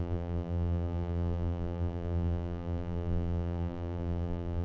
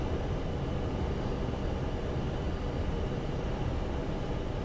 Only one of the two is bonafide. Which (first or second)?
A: second